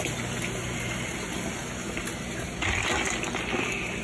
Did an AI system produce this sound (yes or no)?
no